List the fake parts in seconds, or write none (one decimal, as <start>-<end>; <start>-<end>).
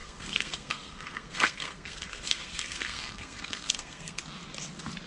0.0-4.2